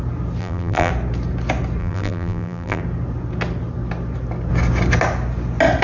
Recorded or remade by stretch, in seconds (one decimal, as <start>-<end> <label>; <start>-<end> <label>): 0.0-0.4 recorded; 0.4-0.9 remade; 0.9-1.8 recorded; 1.8-2.8 remade; 2.8-5.8 recorded